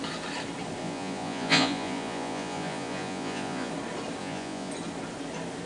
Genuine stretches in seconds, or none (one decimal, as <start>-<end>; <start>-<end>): 0.0-0.8; 3.7-4.2; 4.7-5.7